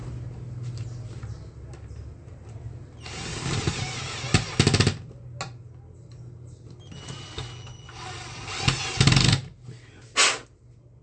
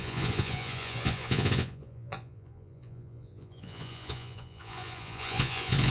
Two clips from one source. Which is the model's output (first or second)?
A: second